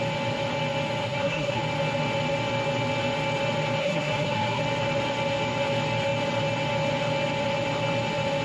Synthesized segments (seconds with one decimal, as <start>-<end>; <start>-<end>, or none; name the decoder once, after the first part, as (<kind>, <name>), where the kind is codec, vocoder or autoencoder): 1.0-1.6 (codec, SNAC); 3.8-4.6

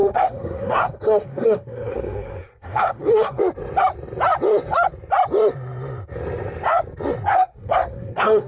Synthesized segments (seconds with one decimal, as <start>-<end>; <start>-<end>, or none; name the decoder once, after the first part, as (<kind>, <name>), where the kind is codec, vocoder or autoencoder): 0.0-3.4 (codec, SNAC); 7.3-8.5

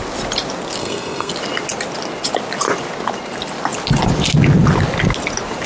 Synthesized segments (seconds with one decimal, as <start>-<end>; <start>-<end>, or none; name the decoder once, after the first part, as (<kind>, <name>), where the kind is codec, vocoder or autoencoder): 0.8-1.3 (codec, SNAC)

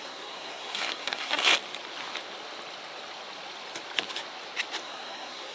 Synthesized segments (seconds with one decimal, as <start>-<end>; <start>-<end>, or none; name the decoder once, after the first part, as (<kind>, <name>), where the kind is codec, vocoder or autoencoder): 0.0-1.5 (codec, SNAC); 4.8-5.5

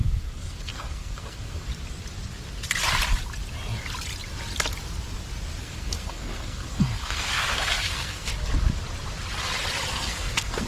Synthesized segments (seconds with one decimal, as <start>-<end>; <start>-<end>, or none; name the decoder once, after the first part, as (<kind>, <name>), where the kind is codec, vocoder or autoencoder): 0.0-1.7 (codec, SNAC); 5.6-8.3; 9.9-10.7

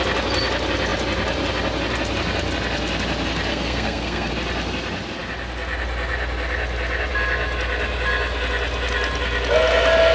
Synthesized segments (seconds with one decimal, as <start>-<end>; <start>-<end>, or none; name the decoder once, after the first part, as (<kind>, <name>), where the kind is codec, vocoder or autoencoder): 3.5-4.3 (codec, SNAC)